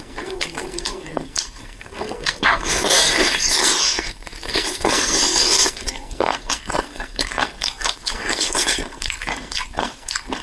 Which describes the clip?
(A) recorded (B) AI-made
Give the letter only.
B